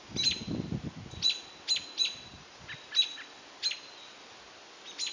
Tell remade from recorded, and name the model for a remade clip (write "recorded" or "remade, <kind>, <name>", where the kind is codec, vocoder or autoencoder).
recorded